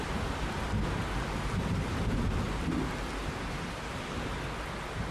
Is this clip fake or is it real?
real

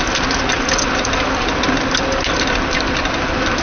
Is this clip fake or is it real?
real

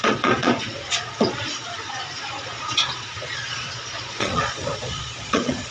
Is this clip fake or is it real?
fake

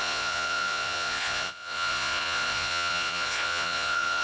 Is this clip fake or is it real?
fake